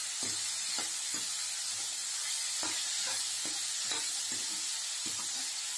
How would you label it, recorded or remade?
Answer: recorded